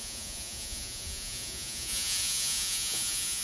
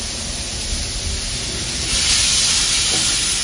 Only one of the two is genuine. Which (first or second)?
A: second